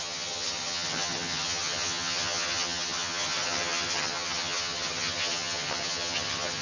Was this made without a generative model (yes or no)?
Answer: no